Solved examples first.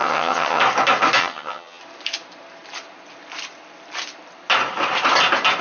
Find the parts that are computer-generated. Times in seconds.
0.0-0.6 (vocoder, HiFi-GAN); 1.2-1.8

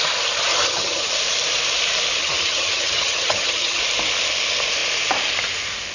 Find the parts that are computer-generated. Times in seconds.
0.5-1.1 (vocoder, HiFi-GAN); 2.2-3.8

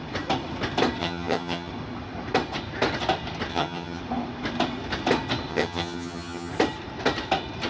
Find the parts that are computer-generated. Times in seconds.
1.0-1.7 (vocoder, HiFi-GAN); 3.5-4.0; 5.5-6.5

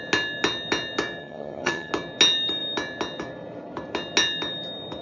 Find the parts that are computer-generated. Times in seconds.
1.2-1.9 (vocoder, HiFi-GAN)